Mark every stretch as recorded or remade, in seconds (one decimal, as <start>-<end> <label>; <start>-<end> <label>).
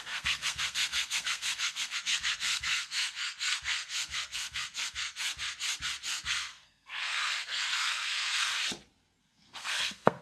0.0-5.3 remade; 5.3-6.1 recorded; 6.1-8.5 remade; 8.5-9.2 recorded; 9.2-10.2 remade